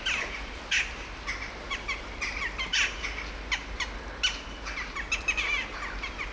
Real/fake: real